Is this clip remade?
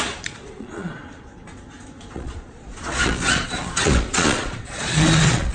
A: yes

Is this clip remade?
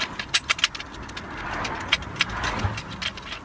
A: no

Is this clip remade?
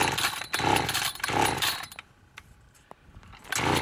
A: no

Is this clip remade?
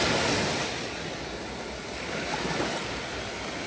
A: no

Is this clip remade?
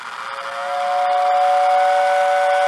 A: no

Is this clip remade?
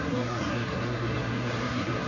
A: yes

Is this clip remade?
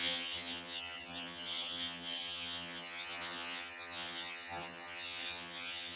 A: yes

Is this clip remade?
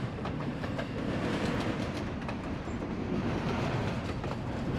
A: yes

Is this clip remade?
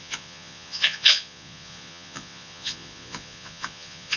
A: yes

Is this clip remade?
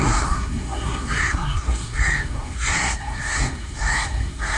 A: yes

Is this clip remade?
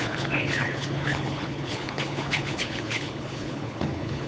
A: yes